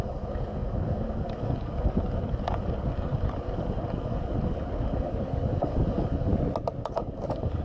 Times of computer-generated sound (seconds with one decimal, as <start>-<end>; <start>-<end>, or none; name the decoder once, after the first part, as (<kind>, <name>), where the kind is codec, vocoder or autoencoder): 0.0-6.3 (codec, DAC); 6.8-7.6